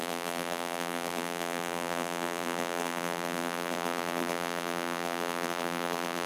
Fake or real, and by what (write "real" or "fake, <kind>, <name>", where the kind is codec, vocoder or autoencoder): fake, vocoder, BigVGAN v2